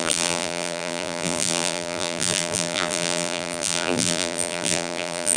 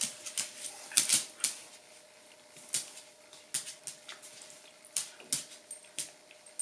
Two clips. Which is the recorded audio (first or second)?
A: second